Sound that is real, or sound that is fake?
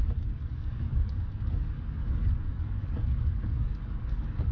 fake